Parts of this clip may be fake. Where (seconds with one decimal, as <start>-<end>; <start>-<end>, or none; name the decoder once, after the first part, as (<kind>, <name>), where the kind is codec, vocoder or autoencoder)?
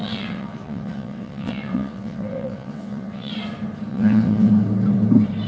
0.0-3.3 (vocoder, WaveNeXt); 3.9-4.5